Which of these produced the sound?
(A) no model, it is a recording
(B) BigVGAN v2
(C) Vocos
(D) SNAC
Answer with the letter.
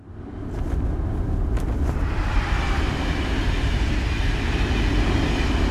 A